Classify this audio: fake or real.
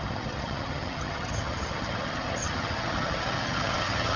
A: fake